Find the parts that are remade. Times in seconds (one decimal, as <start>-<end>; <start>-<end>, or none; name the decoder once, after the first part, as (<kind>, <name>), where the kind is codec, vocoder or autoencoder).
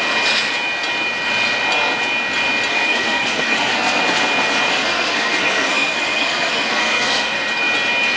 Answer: 2.7-4.0 (codec, SNAC); 4.7-7.5